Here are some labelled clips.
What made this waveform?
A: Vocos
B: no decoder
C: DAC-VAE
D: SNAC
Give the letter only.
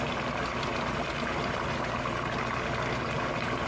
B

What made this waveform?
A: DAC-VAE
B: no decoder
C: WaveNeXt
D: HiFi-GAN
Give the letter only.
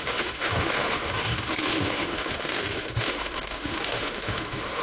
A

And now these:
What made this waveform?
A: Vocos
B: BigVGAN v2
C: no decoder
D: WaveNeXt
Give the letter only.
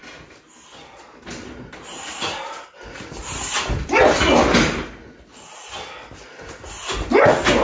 C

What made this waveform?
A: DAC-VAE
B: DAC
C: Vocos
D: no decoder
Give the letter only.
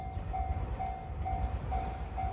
D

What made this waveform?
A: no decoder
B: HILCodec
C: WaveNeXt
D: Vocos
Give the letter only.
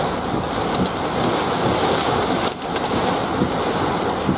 A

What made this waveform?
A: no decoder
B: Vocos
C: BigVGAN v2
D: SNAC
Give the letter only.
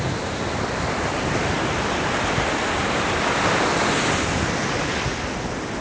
A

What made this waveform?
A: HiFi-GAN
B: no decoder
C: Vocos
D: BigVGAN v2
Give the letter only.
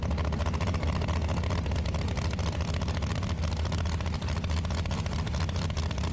B